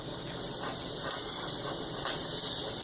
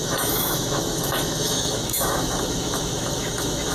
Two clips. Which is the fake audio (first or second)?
second